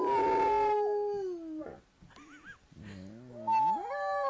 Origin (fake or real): real